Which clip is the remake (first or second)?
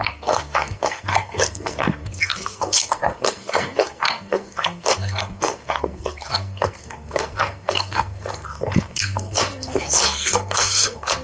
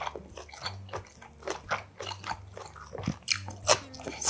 first